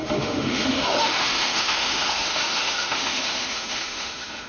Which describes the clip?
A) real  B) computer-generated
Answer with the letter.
B